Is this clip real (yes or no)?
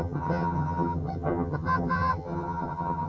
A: no